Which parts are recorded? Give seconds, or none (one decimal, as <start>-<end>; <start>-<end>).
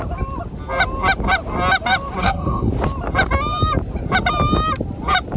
0.0-2.2; 2.7-5.4